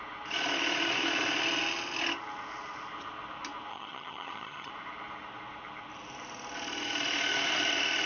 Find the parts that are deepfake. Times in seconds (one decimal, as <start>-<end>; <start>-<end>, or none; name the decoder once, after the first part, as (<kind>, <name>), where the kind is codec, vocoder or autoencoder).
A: 3.7-4.7 (vocoder, HiFi-GAN)